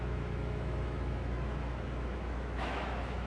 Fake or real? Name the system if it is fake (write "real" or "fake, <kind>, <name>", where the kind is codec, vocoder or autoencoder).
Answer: fake, autoencoder, DAC-VAE